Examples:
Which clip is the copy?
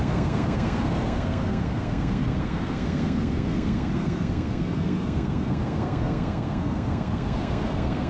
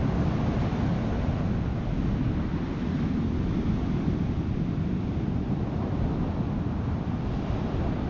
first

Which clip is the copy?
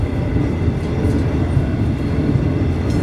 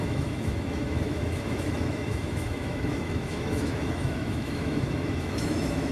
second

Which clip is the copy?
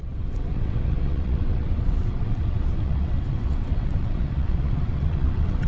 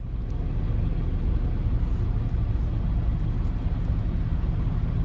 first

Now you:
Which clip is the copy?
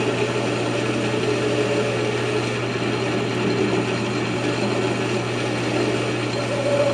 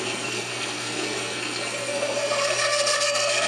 second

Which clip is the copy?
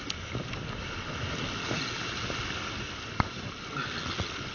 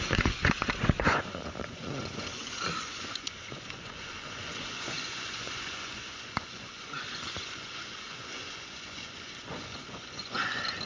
second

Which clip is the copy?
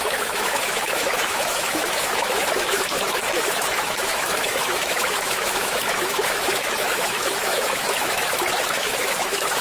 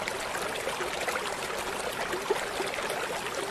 first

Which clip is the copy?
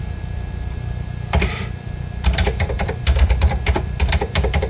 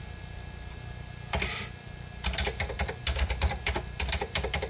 first